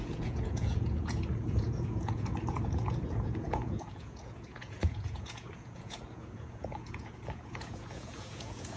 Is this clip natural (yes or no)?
no